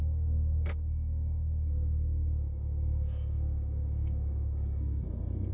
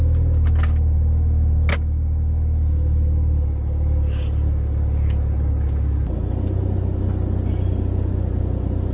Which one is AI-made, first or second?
first